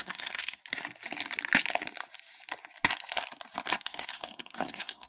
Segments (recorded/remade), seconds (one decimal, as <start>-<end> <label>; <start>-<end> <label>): 0.0-0.6 remade; 0.6-3.7 recorded; 3.7-5.1 remade